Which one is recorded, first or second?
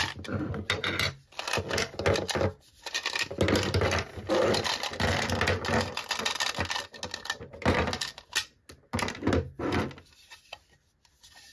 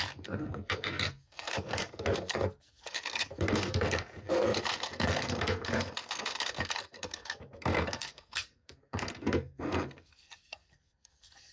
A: first